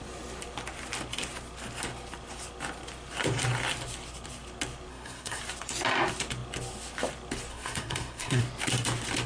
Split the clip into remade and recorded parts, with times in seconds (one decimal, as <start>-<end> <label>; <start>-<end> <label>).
0.0-4.9 recorded; 4.9-5.4 remade; 5.4-7.5 recorded; 7.5-8.4 remade; 8.4-9.3 recorded

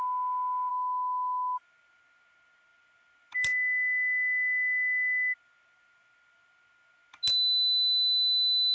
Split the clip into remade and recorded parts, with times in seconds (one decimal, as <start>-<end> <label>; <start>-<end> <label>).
0.0-0.7 recorded; 0.7-1.6 remade; 1.6-8.7 recorded

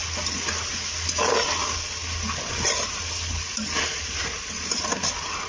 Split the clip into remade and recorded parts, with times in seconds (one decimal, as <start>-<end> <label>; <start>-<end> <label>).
0.0-5.5 recorded

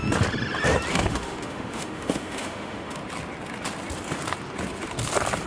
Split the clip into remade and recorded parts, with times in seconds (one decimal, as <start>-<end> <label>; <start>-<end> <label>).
0.0-0.9 recorded; 0.9-3.0 remade; 3.0-5.5 recorded